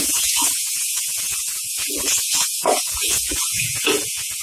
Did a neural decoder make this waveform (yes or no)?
yes